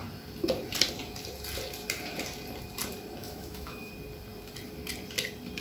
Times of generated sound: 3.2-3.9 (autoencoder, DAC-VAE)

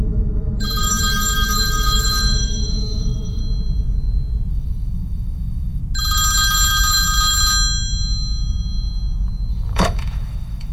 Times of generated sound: 0.0-3.4 (autoencoder, DAC-VAE); 4.5-5.8; 9.5-10.7

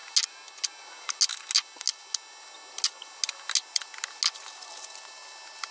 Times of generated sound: none

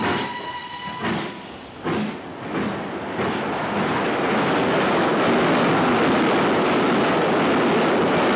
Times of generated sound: none

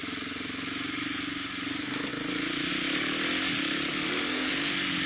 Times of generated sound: 3.9-4.5 (autoencoder, DAC-VAE)